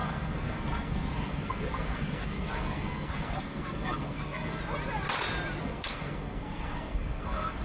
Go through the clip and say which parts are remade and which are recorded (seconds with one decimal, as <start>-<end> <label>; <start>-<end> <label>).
0.0-4.6 remade; 4.6-5.6 recorded; 5.6-7.6 remade